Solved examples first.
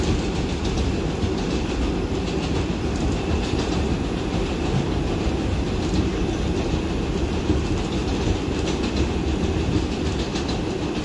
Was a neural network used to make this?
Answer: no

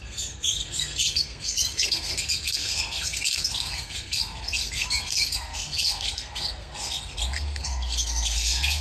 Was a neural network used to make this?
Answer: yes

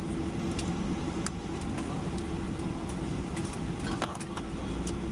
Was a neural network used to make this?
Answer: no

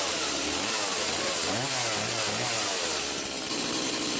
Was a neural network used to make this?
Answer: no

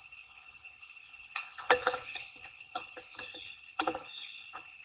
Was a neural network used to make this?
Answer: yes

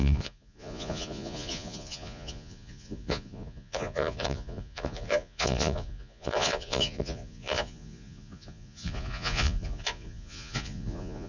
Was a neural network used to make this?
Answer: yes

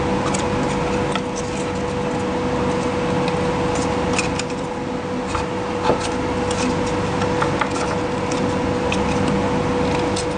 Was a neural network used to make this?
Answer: no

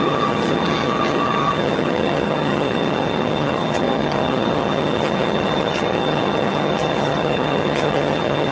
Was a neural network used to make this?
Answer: yes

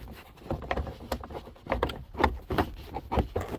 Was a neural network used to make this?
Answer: no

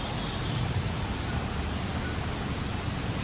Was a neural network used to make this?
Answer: no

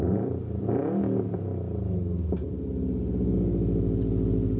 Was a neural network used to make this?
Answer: no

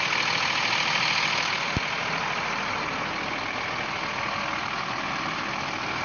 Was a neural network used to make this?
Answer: no